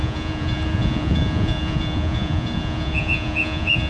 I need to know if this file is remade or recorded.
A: remade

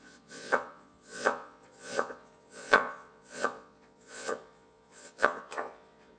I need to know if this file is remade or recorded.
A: remade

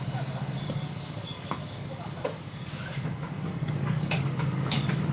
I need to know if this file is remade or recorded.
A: remade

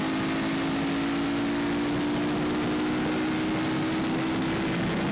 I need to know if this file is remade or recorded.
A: recorded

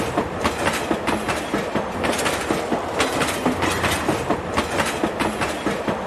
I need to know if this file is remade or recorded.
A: recorded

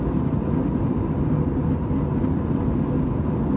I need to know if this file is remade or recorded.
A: recorded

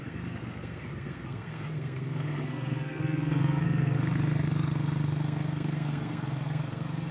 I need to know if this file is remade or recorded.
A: remade